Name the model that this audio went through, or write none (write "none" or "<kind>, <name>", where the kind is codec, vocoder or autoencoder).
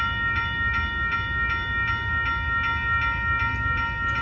none